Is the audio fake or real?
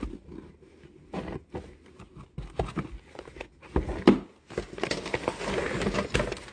real